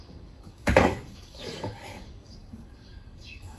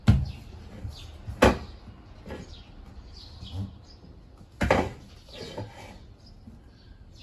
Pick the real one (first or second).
second